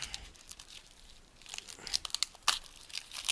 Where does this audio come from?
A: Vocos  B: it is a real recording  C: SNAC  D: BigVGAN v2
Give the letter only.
B